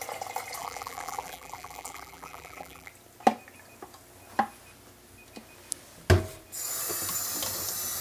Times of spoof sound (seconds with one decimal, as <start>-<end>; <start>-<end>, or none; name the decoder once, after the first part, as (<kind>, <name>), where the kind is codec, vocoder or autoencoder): 0.6-2.9 (vocoder, BigVGAN v2)